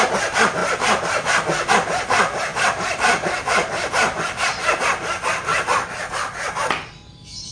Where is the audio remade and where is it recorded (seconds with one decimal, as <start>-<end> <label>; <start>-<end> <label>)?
0.0-2.5 recorded; 2.5-4.8 remade; 4.8-7.5 recorded